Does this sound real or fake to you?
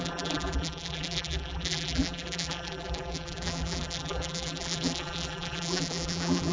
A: fake